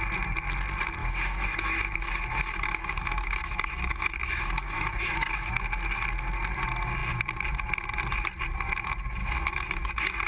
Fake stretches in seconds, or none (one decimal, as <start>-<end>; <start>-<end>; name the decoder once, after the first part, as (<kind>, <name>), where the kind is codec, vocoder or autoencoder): 1.0-5.5 (autoencoder, DAC-VAE); 9.2-9.9